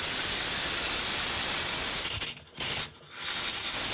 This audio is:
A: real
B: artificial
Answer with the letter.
A